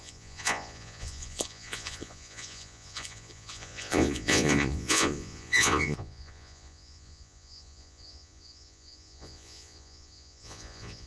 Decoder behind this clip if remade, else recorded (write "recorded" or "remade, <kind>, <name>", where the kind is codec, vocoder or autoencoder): remade, vocoder, Vocos